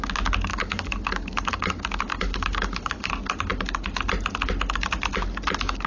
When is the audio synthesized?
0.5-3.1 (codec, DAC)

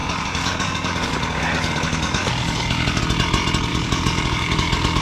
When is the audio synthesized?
0.0-3.0 (codec, DAC); 3.7-5.0

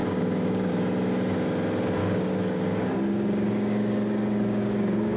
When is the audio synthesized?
0.0-0.7 (codec, DAC); 2.0-5.2